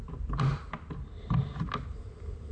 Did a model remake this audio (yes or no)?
no